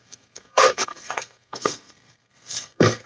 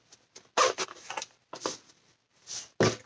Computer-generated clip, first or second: first